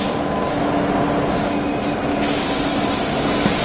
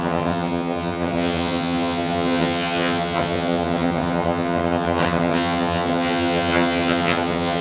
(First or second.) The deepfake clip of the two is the second